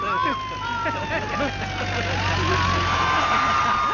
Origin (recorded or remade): recorded